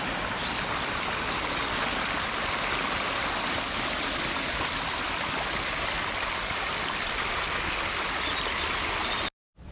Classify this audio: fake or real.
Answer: real